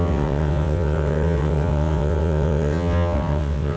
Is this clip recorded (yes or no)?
no